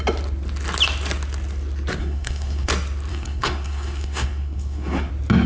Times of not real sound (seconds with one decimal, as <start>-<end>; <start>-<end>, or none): 2.0-2.7; 3.1-5.1